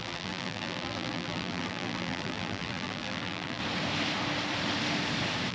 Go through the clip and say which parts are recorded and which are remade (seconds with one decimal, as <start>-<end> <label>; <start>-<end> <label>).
0.0-3.6 remade; 3.6-5.5 recorded